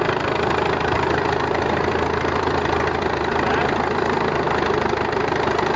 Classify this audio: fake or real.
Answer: fake